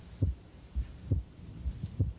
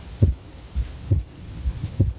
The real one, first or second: first